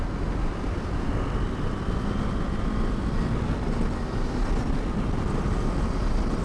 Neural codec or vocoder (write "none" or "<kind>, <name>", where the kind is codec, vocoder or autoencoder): none